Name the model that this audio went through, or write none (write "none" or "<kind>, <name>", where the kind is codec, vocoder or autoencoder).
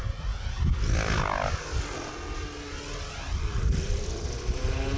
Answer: none